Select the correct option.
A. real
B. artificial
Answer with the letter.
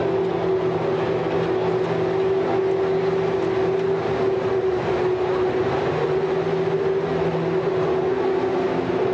A